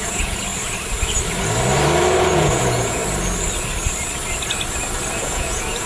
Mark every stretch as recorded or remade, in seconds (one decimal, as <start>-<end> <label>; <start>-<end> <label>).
0.0-0.5 remade; 0.5-2.2 recorded; 2.2-3.0 remade; 3.0-5.2 recorded; 5.2-5.9 remade